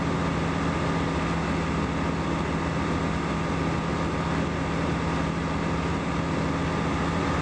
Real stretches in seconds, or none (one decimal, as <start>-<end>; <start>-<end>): 0.0-5.4; 6.1-7.4